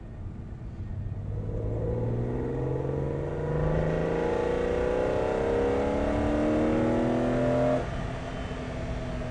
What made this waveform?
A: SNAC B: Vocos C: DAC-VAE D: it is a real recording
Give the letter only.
D